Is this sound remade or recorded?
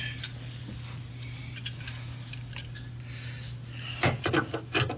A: recorded